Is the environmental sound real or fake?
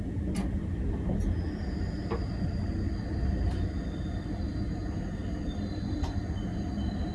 real